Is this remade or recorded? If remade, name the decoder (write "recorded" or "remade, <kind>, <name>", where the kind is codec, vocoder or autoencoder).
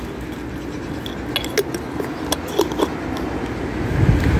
recorded